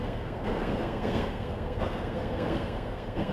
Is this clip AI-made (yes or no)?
yes